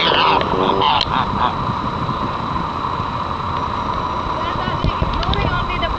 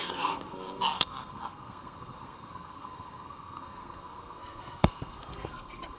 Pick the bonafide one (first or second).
first